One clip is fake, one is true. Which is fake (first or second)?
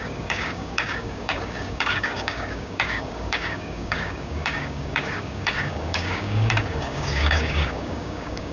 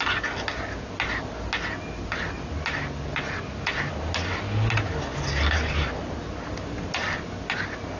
first